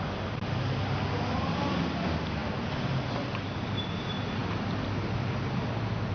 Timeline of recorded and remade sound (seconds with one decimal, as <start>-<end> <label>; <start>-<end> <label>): 0.0-6.1 recorded

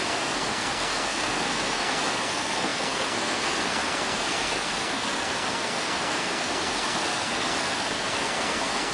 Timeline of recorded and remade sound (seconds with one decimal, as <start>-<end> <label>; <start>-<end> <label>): 0.0-8.9 remade

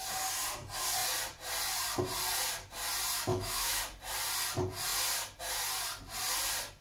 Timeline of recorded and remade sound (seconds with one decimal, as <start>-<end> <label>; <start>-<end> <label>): 0.0-3.3 recorded; 3.3-3.8 remade; 3.8-6.8 recorded

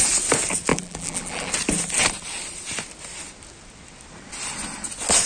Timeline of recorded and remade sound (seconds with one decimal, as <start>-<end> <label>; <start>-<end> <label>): 0.0-0.7 recorded; 0.7-1.5 remade; 1.5-5.3 recorded

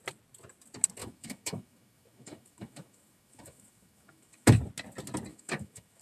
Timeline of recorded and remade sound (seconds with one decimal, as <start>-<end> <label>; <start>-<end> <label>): 0.0-1.0 recorded; 1.0-4.6 remade; 4.6-5.3 recorded; 5.3-6.0 remade

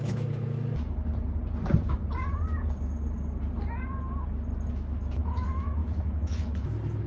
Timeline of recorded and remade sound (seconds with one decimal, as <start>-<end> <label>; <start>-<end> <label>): 0.0-1.1 remade; 1.1-4.7 recorded; 4.7-7.1 remade

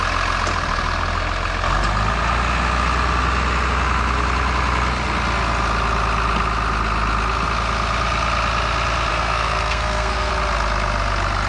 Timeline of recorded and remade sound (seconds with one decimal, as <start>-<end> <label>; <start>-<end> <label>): 0.0-9.1 recorded; 9.1-10.3 remade; 10.3-11.5 recorded

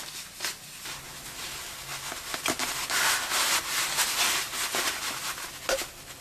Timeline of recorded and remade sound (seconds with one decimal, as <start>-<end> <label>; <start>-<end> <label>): 0.0-6.2 recorded